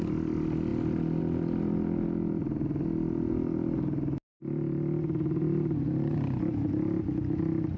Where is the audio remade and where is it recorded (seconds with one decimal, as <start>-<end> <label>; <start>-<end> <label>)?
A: 0.0-7.8 recorded